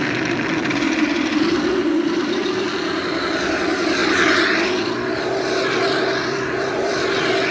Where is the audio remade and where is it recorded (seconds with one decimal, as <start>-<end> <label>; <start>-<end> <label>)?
0.0-2.4 remade; 2.4-3.2 recorded; 3.2-7.5 remade